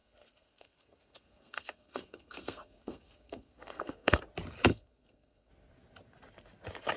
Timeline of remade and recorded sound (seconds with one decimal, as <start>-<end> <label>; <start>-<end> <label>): 0.0-4.2 remade; 4.2-4.7 recorded; 4.7-5.5 remade; 5.5-7.0 recorded